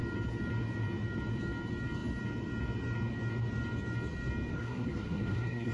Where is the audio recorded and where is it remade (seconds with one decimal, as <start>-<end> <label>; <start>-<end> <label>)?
0.0-4.5 recorded; 4.5-5.7 remade